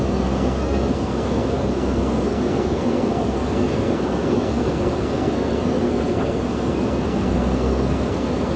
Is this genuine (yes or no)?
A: no